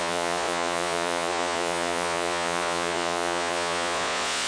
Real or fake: fake